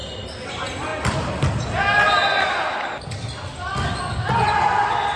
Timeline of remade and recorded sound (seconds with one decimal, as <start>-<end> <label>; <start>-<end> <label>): 0.0-5.2 recorded